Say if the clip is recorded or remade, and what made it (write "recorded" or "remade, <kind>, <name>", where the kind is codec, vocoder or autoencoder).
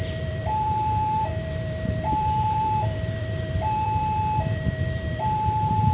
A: remade, vocoder, BigVGAN v2